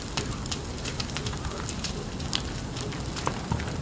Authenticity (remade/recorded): recorded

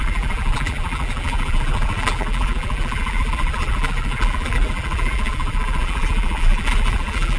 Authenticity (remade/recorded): remade